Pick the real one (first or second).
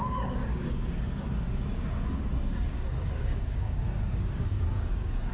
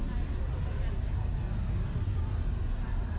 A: second